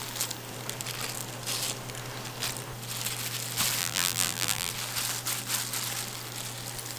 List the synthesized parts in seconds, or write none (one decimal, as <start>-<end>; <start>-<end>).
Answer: 3.8-4.7